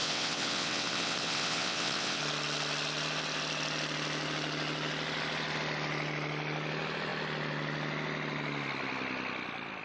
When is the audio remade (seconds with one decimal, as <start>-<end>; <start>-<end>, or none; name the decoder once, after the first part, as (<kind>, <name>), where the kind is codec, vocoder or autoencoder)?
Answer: 0.0-2.2 (vocoder, WaveNeXt)